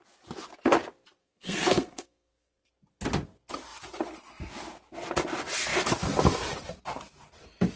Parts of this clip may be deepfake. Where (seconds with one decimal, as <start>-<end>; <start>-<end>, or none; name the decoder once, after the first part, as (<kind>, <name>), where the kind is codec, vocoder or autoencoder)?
1.2-2.7 (codec, SNAC)